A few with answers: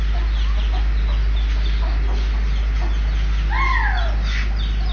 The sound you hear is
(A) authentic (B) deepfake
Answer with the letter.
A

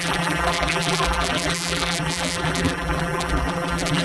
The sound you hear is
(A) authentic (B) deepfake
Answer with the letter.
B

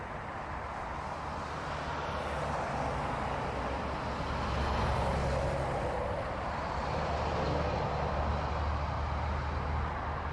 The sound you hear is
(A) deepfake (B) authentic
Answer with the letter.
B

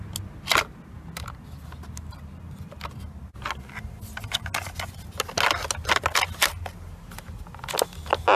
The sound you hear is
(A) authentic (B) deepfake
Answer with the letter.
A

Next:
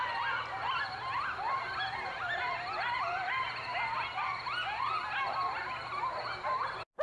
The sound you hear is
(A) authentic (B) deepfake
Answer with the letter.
A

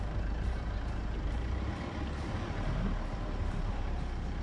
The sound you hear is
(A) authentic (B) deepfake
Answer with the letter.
B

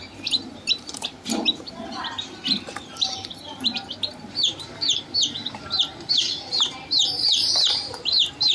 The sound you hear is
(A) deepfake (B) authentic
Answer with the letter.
A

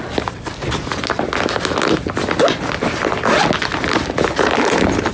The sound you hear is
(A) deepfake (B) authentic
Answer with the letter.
B